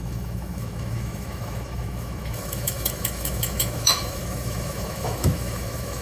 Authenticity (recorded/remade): remade